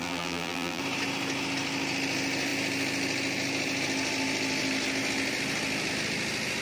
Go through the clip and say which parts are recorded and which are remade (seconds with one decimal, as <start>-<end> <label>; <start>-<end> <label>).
0.0-0.8 remade; 0.8-6.6 recorded